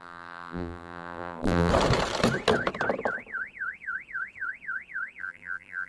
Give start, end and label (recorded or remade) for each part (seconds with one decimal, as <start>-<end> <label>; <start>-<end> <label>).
0.0-1.7 remade; 1.7-5.2 recorded; 5.2-5.9 remade